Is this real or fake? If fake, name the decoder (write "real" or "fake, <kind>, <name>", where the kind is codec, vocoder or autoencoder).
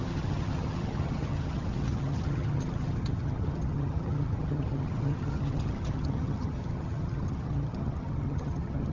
fake, vocoder, HiFi-GAN